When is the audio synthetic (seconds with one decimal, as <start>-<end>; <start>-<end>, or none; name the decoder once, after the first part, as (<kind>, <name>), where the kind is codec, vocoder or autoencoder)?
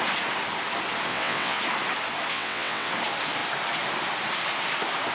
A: 1.1-1.6 (vocoder, WaveNeXt); 2.3-2.9